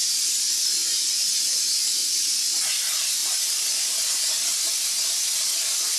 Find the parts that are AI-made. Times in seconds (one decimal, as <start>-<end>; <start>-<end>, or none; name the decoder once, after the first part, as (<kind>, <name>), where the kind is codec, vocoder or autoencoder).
0.8-1.6 (vocoder, Vocos)

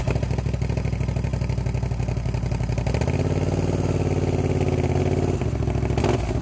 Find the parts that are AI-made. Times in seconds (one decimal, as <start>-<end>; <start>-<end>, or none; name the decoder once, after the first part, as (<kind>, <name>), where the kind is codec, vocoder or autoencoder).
none